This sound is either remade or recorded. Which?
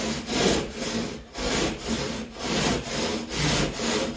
recorded